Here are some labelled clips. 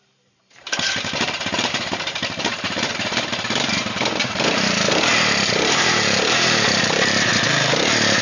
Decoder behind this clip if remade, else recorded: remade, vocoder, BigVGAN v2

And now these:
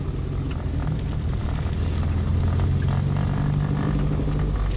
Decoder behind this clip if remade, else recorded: recorded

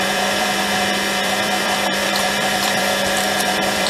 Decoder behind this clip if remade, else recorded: remade, vocoder, BigVGAN v2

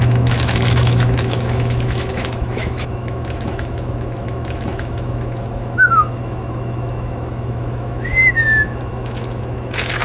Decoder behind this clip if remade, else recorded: remade, autoencoder, DAC-VAE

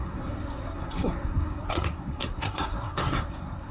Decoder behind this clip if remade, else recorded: remade, codec, SNAC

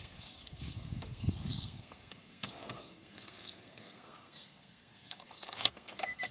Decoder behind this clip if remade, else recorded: remade, codec, SNAC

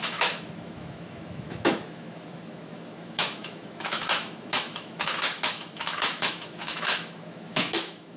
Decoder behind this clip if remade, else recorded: remade, autoencoder, DAC-VAE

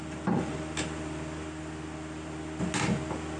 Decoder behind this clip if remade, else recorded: recorded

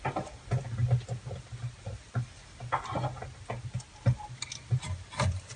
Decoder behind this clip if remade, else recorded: recorded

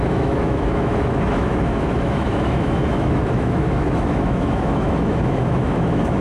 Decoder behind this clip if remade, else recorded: remade, autoencoder, DAC-VAE